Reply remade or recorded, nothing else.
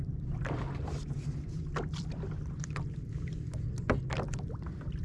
remade